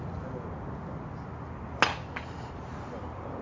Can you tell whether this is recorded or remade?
recorded